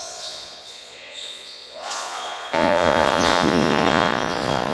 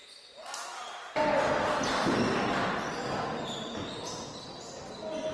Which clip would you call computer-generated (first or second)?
first